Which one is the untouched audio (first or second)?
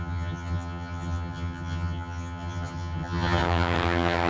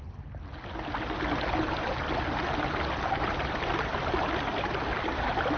second